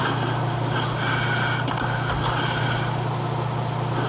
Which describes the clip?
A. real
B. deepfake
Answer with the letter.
A